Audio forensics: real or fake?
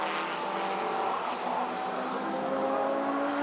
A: real